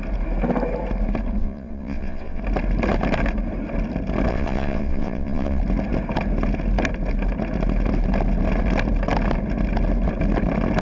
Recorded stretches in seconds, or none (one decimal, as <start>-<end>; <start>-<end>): 0.0-1.4; 2.4-4.3; 5.6-10.8